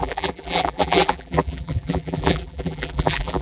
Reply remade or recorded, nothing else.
remade